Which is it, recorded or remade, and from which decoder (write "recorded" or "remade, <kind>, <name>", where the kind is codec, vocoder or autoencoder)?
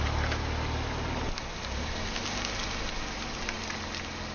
recorded